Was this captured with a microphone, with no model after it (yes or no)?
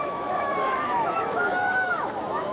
no